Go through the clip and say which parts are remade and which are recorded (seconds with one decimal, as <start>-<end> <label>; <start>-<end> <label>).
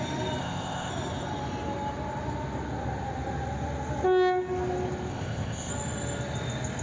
0.0-0.4 recorded; 0.4-0.9 remade; 0.9-5.1 recorded; 5.1-5.7 remade; 5.7-6.8 recorded